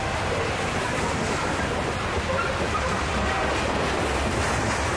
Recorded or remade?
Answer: recorded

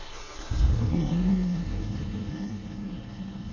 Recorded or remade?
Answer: remade